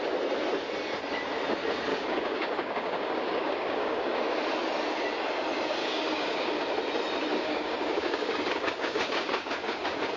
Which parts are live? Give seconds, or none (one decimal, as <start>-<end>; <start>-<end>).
0.0-1.9; 4.2-5.8; 6.6-7.3